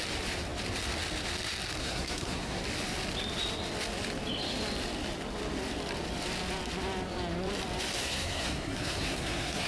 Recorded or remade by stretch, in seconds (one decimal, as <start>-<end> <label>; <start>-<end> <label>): 0.0-1.8 recorded; 1.8-2.6 remade; 2.6-8.0 recorded; 8.0-9.7 remade

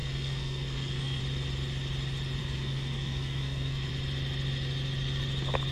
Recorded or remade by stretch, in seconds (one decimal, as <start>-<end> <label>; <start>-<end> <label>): 0.0-1.2 remade; 1.2-2.4 recorded; 2.4-3.9 remade; 3.9-5.7 recorded